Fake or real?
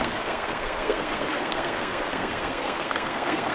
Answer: fake